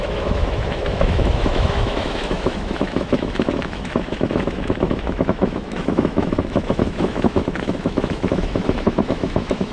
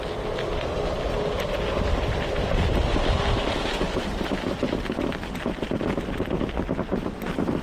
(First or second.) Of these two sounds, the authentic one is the second